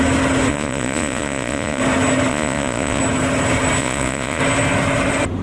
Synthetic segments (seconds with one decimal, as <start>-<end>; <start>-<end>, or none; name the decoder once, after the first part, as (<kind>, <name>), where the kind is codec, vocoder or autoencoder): 0.5-1.8 (vocoder, Vocos); 2.3-3.0; 3.8-4.4